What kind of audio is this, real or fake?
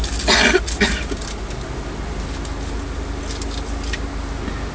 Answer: real